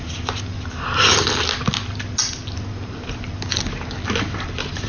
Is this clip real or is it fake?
real